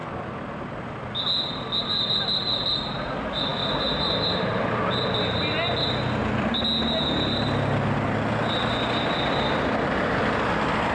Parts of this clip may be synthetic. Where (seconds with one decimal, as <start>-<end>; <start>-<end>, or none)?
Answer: none